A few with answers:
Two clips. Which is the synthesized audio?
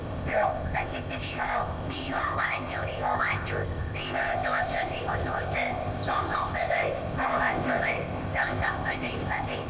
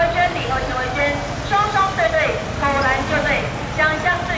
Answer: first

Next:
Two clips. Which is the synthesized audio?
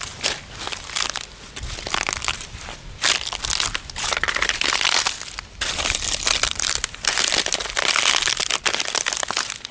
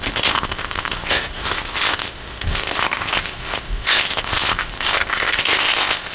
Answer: second